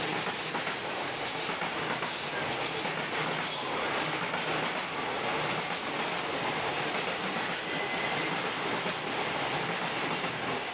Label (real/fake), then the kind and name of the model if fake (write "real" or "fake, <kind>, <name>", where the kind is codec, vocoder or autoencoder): real